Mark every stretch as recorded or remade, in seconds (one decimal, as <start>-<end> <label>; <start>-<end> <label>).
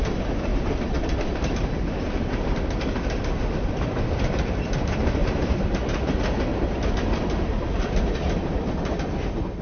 0.0-0.5 recorded; 0.5-1.5 remade; 1.5-5.2 recorded; 5.2-6.1 remade; 6.1-6.5 recorded; 6.5-8.8 remade; 8.8-9.6 recorded